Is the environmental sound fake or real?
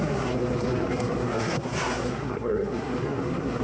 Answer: fake